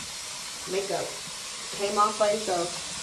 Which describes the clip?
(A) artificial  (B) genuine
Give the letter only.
B